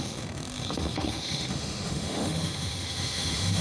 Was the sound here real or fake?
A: fake